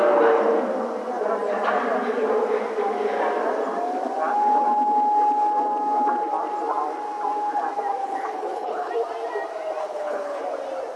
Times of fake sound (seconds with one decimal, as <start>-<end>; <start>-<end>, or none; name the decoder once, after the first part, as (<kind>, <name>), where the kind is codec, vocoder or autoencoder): 8.0-8.9 (codec, HILCodec); 9.8-10.4